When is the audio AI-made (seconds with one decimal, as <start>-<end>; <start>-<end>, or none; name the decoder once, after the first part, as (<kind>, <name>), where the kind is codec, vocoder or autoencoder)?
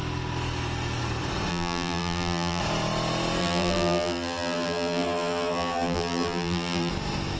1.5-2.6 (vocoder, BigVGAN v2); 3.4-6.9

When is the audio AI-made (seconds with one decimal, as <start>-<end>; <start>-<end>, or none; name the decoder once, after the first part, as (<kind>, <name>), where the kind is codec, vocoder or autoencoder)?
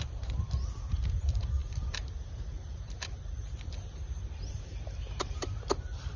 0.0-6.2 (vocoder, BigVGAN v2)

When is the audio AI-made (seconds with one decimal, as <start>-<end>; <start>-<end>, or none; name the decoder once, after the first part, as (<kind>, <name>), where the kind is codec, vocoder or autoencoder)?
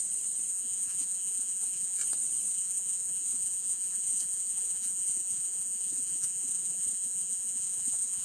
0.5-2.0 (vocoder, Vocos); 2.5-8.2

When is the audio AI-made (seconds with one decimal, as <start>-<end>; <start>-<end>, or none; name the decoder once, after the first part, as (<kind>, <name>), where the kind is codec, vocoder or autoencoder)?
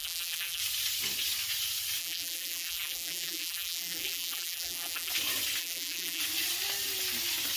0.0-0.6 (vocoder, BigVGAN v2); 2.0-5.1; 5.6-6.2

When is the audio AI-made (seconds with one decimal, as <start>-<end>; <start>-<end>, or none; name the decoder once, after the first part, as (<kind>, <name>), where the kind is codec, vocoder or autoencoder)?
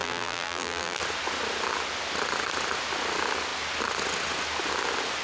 0.0-1.0 (vocoder, BigVGAN v2)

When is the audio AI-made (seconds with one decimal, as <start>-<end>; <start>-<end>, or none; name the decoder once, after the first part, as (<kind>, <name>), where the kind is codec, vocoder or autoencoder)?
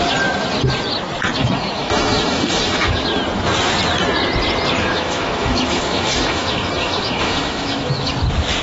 1.4-3.0 (autoencoder, DAC-VAE); 4.8-8.1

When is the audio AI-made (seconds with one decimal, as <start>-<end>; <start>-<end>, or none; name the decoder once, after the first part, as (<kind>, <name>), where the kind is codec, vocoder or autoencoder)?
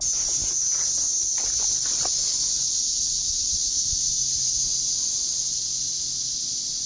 none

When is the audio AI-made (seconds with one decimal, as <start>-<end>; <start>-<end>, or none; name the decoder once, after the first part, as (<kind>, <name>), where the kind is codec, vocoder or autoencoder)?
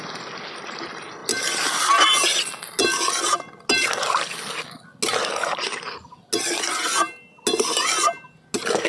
none